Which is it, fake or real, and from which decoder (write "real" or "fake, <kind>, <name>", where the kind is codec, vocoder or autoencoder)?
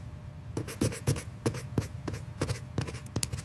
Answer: real